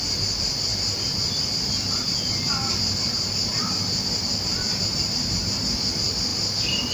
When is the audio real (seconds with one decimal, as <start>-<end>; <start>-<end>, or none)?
0.0-6.9